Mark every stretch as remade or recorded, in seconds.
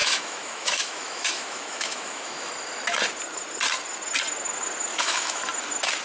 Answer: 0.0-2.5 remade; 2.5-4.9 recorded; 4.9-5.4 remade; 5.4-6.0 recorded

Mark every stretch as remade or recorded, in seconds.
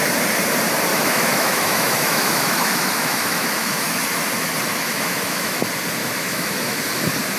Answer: 0.0-0.9 recorded; 0.9-4.0 remade; 4.0-4.7 recorded; 4.7-5.6 remade; 5.6-6.0 recorded; 6.0-6.8 remade; 6.8-7.4 recorded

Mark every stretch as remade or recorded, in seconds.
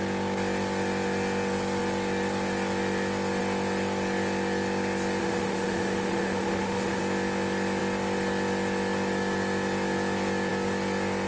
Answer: 0.0-5.2 recorded; 5.2-7.0 remade; 7.0-11.3 recorded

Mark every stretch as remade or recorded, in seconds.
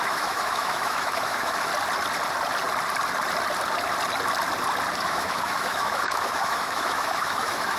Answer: 0.0-1.7 remade; 1.7-5.0 recorded; 5.0-7.8 remade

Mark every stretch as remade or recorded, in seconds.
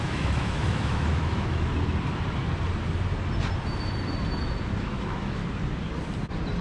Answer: 0.0-1.7 remade; 1.7-4.8 recorded; 4.8-5.4 remade; 5.4-6.6 recorded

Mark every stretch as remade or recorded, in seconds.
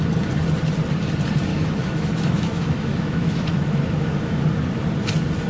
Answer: 0.0-1.5 recorded; 1.5-4.4 remade; 4.4-5.5 recorded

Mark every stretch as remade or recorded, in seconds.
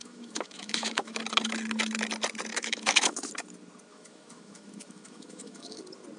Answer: 0.0-1.2 remade; 1.2-2.5 recorded; 2.5-3.3 remade; 3.3-3.9 recorded; 3.9-5.8 remade; 5.8-6.2 recorded